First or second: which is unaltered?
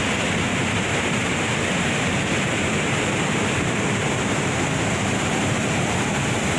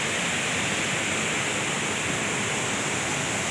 second